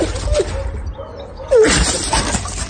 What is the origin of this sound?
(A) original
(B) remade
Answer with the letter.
A